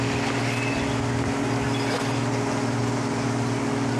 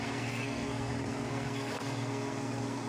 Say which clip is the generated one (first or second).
second